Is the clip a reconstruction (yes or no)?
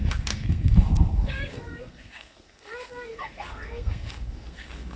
yes